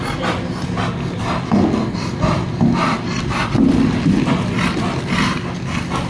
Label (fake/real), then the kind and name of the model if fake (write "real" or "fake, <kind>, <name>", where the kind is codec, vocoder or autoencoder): real